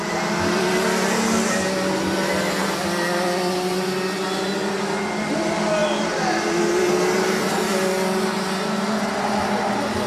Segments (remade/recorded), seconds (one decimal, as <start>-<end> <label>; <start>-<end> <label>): 0.0-10.1 recorded